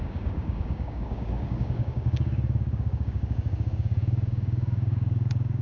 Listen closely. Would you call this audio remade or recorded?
remade